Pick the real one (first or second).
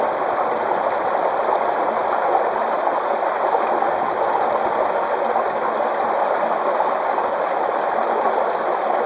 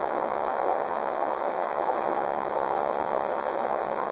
first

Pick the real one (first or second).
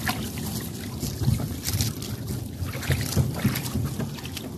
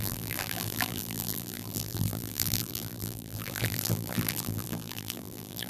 first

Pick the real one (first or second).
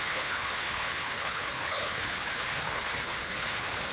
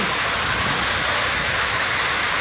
second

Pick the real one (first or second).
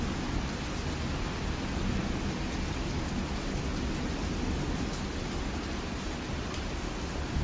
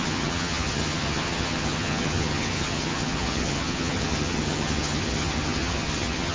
first